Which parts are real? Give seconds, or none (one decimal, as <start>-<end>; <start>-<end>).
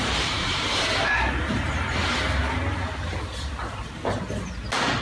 2.0-5.0